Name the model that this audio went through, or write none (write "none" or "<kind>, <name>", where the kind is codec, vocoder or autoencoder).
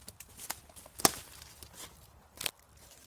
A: none